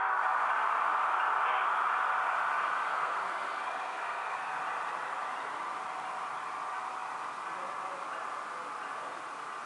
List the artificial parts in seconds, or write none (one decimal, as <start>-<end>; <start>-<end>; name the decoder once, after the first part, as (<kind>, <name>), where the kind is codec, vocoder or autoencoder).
2.9-4.6 (codec, SNAC)